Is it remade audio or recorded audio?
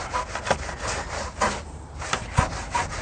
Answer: recorded